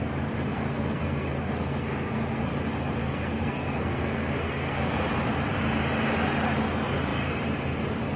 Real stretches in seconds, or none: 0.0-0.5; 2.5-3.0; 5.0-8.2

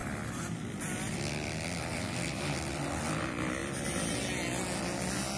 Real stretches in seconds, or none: 0.0-5.4

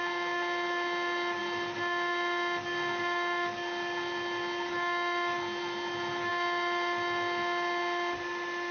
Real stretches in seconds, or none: 0.0-8.7